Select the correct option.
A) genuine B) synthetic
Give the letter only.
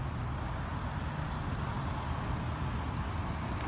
A